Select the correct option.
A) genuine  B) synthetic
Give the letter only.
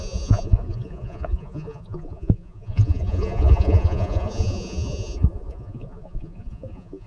B